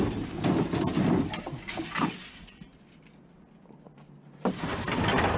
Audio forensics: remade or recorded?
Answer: recorded